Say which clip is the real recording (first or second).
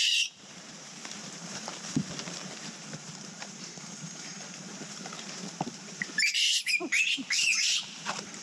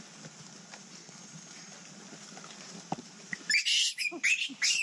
second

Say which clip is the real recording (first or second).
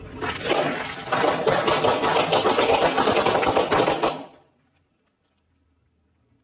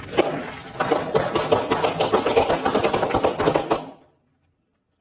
second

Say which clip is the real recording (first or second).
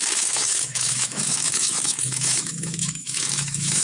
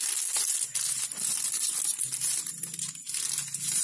second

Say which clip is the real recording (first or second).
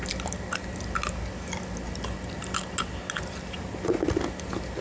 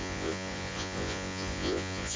first